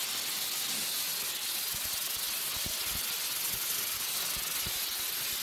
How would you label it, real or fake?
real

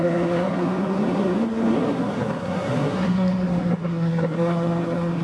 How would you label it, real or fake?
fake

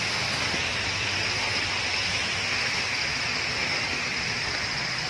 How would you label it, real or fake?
fake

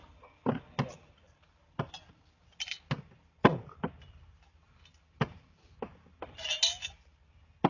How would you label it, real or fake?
real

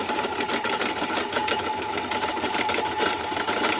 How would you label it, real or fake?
fake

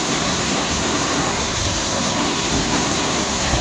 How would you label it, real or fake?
fake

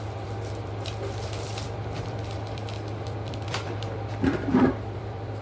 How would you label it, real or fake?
fake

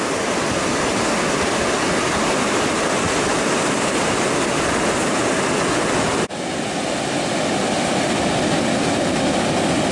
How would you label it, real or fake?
real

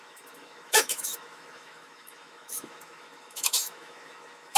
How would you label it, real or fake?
fake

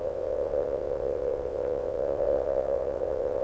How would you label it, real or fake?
fake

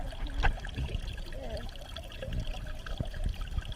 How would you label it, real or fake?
real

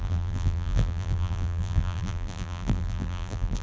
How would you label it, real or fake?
fake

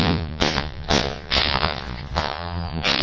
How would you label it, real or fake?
fake